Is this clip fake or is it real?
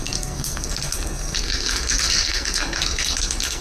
fake